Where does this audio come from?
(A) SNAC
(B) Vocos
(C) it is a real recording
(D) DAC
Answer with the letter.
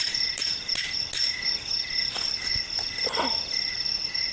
C